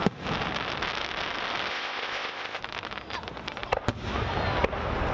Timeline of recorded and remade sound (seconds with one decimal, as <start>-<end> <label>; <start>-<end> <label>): 0.0-1.7 recorded; 1.7-2.6 remade; 2.6-5.1 recorded